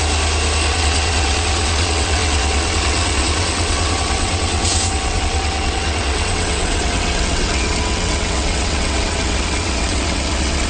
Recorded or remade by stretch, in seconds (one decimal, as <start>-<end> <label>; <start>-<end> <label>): 0.0-0.7 recorded; 0.7-10.7 remade